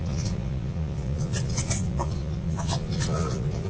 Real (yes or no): no